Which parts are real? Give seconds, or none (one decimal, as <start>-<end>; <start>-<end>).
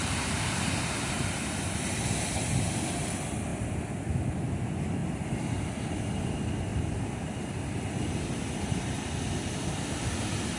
0.0-10.6